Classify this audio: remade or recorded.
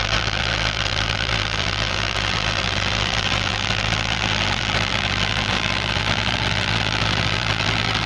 remade